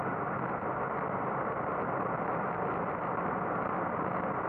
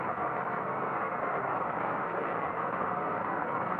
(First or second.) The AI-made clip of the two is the second